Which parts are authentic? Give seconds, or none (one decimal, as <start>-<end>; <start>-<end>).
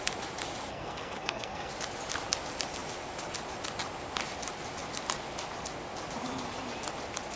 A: 0.0-0.7; 1.7-7.4